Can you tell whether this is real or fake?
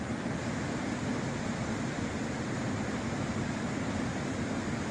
real